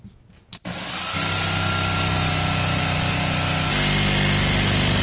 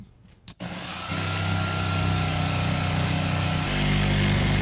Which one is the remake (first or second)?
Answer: second